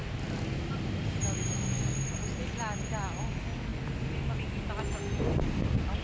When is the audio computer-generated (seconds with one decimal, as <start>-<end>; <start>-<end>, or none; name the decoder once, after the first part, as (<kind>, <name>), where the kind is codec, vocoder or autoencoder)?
none